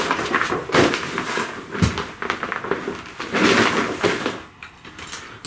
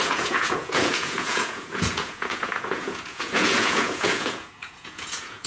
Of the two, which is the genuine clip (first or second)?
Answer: first